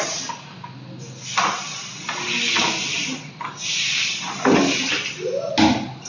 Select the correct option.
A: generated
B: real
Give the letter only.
B